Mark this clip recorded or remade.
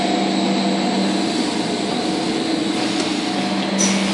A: recorded